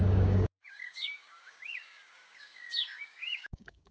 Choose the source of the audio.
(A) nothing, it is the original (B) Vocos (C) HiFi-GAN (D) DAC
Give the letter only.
D